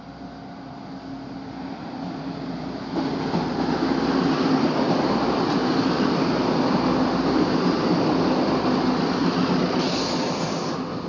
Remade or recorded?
recorded